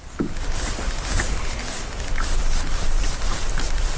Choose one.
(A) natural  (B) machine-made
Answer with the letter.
A